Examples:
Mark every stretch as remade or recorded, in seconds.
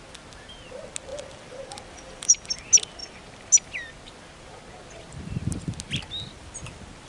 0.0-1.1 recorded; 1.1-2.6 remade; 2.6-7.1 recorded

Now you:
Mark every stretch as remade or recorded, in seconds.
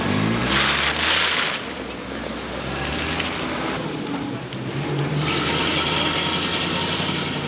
0.0-7.5 recorded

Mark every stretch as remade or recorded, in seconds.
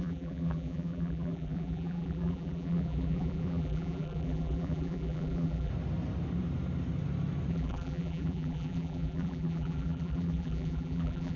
0.0-5.7 remade; 5.7-7.5 recorded; 7.5-11.4 remade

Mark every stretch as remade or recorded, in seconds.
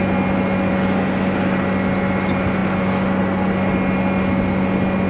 0.0-5.1 recorded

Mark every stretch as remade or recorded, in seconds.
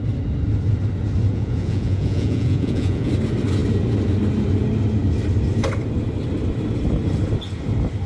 0.0-1.3 recorded; 1.3-3.1 remade; 3.1-8.1 recorded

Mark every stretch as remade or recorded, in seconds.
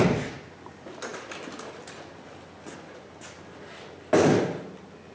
0.0-5.1 recorded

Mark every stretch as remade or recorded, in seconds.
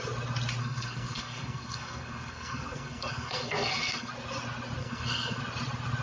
0.0-0.6 recorded; 0.6-4.1 remade; 4.1-4.8 recorded; 4.8-5.4 remade; 5.4-6.0 recorded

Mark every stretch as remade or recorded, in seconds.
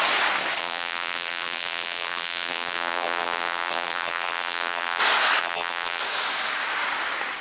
0.0-0.6 recorded; 0.6-5.0 remade; 5.0-5.4 recorded; 5.4-6.0 remade; 6.0-7.4 recorded